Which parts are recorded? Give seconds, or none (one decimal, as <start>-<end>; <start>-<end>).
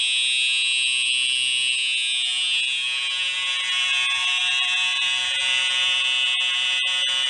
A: 0.0-7.3